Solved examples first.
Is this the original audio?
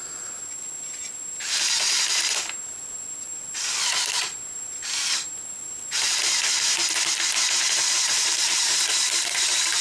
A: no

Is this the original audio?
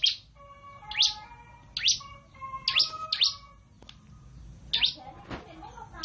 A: yes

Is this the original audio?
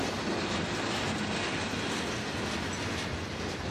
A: yes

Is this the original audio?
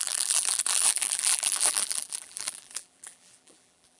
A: no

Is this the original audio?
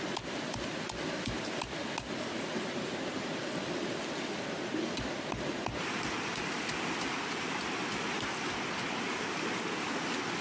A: yes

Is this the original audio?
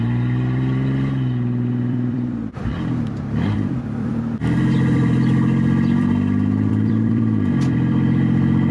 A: no